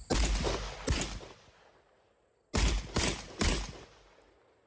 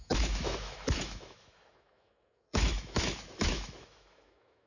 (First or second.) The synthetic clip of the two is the second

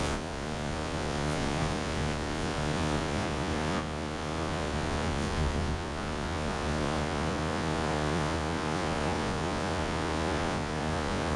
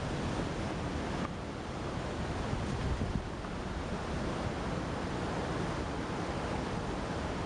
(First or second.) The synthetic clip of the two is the first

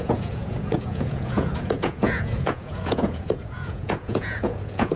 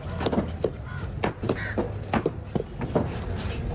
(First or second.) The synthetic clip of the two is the first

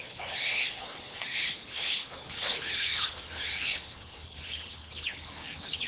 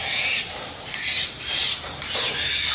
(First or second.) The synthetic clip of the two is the first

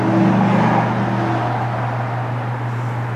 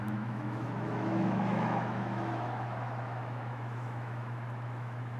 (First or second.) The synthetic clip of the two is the second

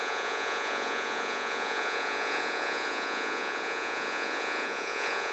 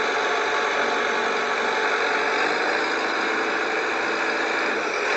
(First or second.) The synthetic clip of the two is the first